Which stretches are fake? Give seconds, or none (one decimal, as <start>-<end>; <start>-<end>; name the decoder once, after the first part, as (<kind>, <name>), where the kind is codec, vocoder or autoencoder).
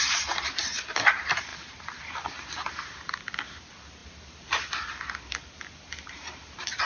none